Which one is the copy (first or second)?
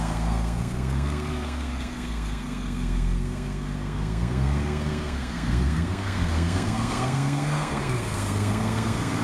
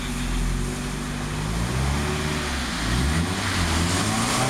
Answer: first